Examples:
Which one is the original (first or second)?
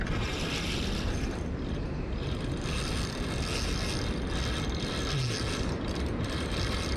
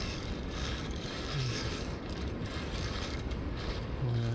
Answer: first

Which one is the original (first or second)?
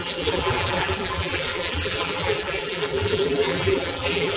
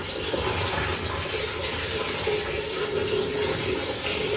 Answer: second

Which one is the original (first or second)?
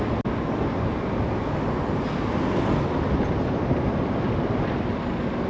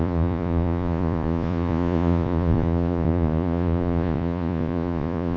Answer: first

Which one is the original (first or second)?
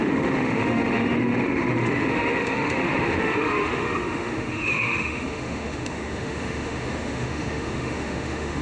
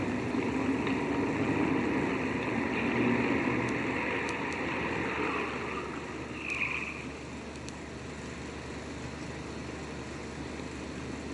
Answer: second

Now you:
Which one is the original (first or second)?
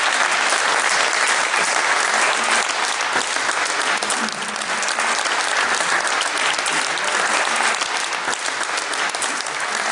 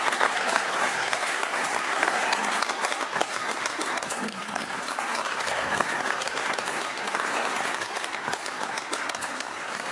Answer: first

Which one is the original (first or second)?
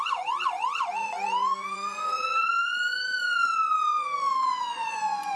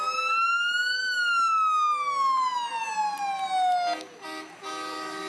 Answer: second